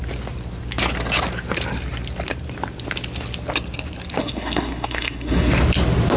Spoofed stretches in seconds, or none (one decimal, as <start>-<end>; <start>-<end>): 4.2-5.5